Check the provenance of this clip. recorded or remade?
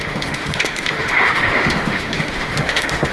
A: remade